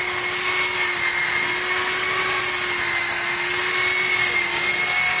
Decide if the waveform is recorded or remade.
recorded